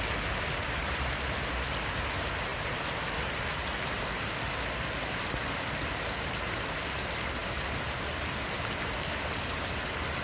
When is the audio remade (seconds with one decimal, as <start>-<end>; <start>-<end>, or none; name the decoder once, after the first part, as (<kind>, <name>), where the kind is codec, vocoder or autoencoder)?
none